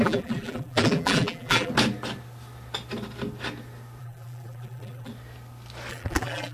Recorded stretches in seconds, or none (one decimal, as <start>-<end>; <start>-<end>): 1.7-4.0; 5.1-5.9